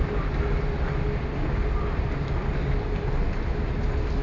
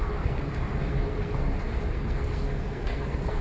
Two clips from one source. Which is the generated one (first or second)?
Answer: second